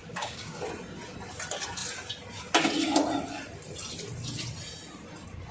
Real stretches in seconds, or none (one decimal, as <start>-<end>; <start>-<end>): 0.6-5.5